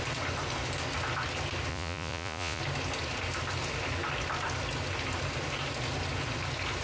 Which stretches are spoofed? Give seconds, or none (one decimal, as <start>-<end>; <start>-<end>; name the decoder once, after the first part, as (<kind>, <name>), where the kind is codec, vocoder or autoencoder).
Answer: 1.7-2.6 (vocoder, Vocos)